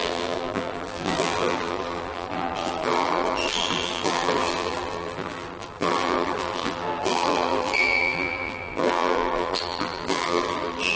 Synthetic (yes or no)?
yes